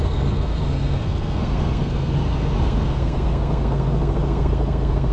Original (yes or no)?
no